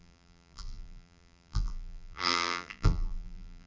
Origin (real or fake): fake